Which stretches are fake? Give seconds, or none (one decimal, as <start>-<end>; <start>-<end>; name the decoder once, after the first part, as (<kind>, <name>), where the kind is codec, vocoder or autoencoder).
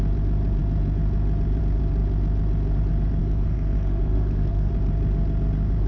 3.2-4.7 (codec, SNAC)